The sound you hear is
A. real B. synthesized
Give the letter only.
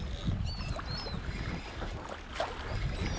A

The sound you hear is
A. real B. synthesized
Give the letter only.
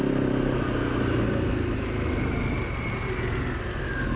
A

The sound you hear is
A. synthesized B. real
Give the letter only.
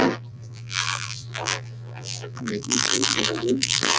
A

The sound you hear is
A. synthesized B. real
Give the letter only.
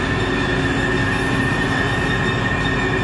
B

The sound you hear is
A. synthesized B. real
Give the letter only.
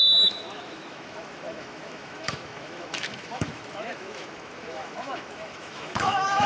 A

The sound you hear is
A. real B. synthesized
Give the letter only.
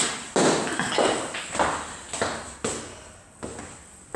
A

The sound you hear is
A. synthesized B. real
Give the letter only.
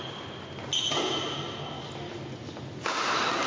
B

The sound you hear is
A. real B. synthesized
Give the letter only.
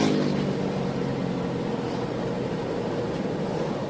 A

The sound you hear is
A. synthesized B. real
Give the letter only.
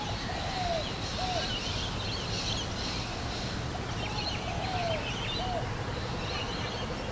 B